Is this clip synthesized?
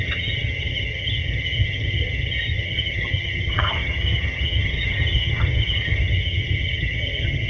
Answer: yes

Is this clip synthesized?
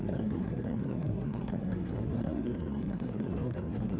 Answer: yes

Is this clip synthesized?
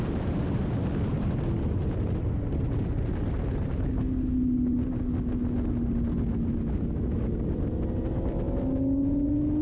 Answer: no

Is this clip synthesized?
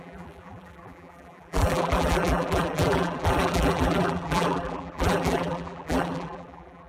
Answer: yes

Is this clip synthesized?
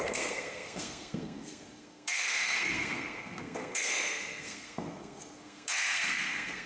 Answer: yes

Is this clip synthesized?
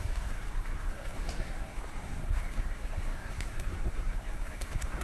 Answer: yes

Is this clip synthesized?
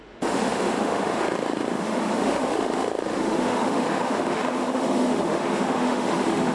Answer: yes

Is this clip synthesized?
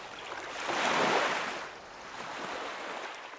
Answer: no